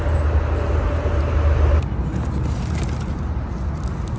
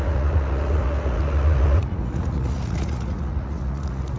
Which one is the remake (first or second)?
second